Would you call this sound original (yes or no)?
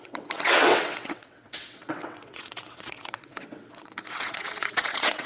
no